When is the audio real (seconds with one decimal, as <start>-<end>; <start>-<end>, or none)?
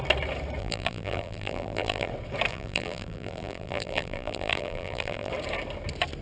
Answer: 0.0-0.6; 2.1-2.5; 5.3-6.2